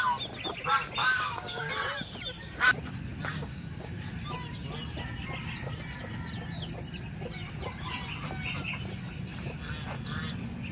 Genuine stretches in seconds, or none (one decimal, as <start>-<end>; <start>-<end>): 0.0-1.0; 1.7-3.3; 4.1-10.7